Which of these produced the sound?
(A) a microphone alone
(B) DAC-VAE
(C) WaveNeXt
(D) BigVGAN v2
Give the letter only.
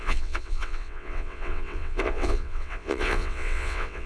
C